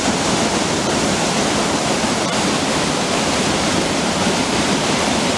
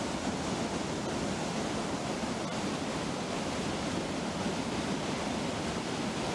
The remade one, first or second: first